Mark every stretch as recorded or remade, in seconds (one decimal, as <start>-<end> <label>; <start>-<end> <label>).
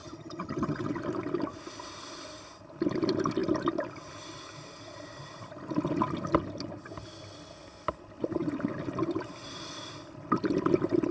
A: 0.0-0.9 remade; 0.9-11.1 recorded